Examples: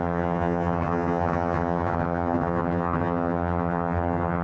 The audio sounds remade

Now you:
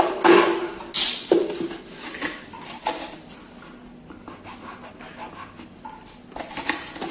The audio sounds recorded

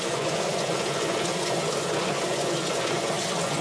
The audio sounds remade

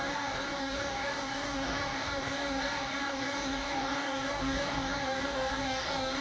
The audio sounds remade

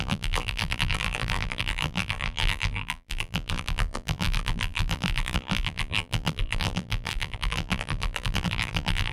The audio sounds remade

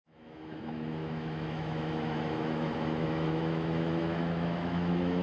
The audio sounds remade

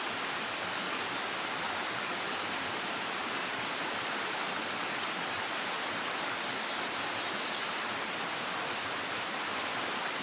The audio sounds recorded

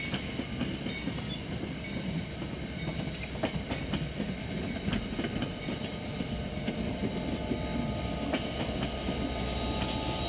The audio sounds recorded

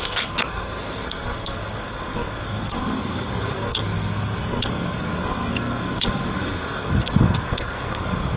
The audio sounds remade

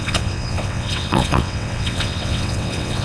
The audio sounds remade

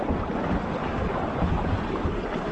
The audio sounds recorded